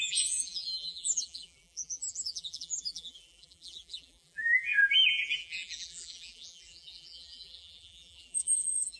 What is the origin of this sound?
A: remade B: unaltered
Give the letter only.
A